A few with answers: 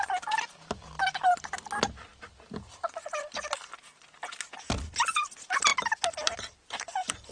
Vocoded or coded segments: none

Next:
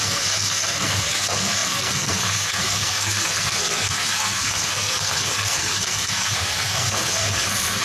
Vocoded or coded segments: 0.0-7.8

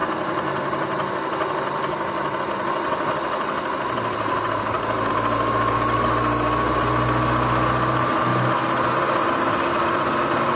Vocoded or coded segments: none

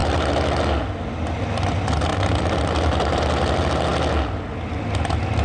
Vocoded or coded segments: 2.1-3.2

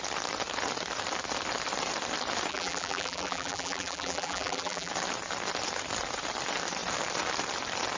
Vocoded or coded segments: 2.5-4.9